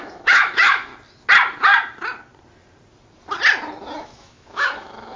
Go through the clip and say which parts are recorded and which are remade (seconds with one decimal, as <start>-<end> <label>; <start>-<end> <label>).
0.0-0.9 remade; 0.9-4.0 recorded; 4.0-5.2 remade